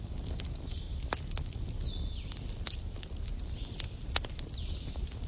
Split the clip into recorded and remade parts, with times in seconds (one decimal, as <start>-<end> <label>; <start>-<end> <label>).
0.0-5.3 recorded